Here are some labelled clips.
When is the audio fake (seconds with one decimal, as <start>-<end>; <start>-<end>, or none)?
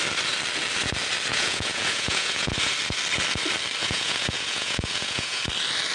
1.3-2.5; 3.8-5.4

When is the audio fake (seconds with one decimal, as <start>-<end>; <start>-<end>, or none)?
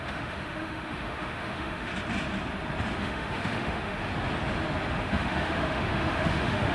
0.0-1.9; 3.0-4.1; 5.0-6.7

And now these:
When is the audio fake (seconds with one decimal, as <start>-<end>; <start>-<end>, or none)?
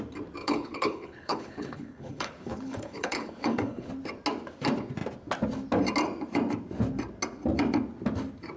0.4-3.9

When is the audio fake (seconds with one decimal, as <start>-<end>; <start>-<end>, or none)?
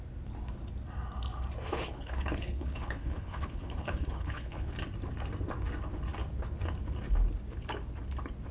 1.7-4.7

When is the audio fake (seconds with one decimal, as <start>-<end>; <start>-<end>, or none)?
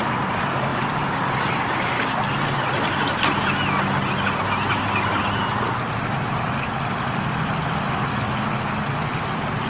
0.7-1.4